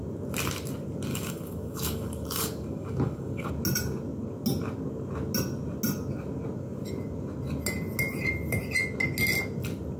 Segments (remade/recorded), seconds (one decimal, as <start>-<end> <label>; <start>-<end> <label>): 0.0-1.1 recorded; 1.1-3.5 remade; 3.5-10.0 recorded

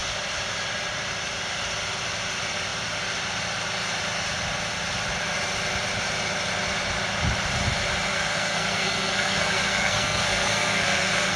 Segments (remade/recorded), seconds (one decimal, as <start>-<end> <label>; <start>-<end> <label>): 0.0-8.1 recorded; 8.1-11.4 remade